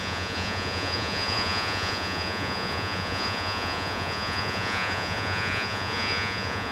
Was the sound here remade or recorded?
remade